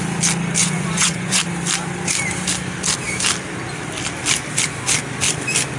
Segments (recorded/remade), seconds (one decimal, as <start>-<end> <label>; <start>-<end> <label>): 0.0-0.6 recorded; 0.6-1.4 remade; 1.4-5.8 recorded